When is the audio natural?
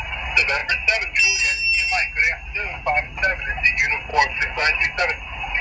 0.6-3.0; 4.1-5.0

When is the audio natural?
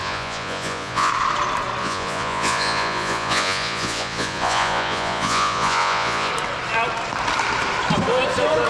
1.1-1.8; 6.3-8.7